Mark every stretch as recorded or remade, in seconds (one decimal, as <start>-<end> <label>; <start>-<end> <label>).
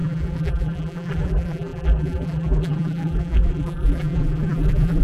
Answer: 0.0-5.0 remade